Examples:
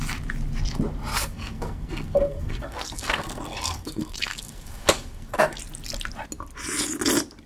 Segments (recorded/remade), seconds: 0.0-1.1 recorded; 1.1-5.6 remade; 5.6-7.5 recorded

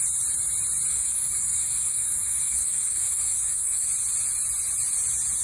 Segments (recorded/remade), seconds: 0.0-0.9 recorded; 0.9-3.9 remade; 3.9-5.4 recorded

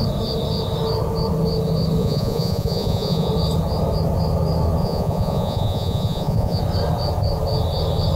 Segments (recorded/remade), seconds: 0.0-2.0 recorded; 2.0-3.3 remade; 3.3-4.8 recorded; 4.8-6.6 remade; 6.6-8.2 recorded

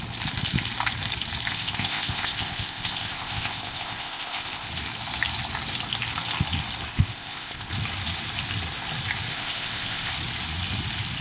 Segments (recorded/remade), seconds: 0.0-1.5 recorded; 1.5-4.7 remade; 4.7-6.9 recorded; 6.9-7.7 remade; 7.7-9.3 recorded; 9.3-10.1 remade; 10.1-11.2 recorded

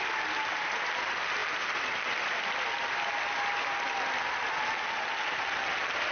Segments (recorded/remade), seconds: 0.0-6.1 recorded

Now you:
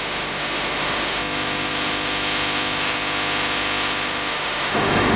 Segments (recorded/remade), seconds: 0.0-1.2 remade; 1.2-4.3 recorded; 4.3-5.2 remade

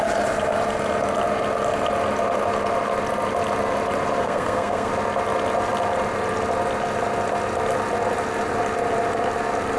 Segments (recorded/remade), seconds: 0.0-4.2 recorded; 4.2-4.9 remade; 4.9-9.8 recorded